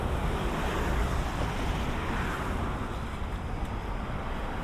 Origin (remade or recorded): recorded